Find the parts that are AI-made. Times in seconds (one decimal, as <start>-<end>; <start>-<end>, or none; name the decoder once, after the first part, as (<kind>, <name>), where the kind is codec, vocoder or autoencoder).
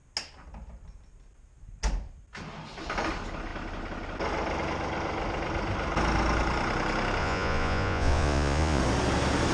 7.2-8.8 (vocoder, Vocos)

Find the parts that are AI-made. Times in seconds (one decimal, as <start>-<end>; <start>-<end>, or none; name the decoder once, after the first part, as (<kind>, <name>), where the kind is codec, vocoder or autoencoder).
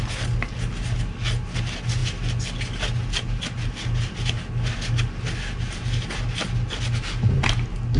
none